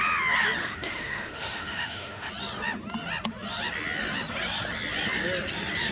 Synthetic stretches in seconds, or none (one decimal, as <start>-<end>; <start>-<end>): 0.6-2.3